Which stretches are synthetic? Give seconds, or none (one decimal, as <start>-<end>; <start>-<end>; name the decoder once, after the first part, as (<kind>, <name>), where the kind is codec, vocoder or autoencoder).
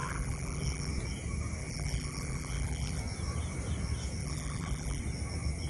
0.0-0.9 (vocoder, BigVGAN v2); 1.6-3.0; 4.2-5.0